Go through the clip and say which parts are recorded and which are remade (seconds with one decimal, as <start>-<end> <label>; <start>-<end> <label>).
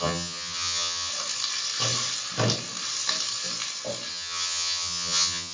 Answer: 0.0-1.1 remade; 1.1-4.1 recorded; 4.1-5.5 remade